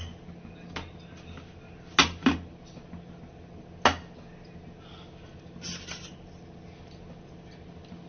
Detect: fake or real real